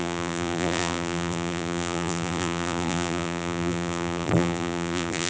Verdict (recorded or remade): remade